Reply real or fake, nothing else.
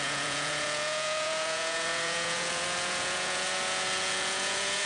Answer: fake